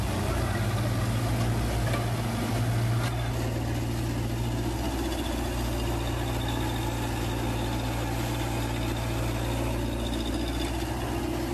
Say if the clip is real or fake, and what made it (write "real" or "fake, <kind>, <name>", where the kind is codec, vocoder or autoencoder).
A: real